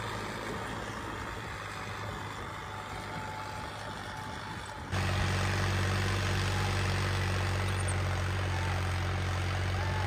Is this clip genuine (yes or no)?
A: yes